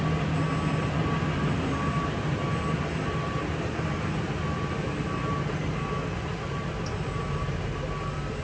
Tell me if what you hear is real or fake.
real